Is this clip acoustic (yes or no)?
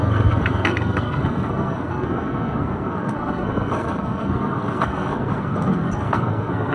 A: no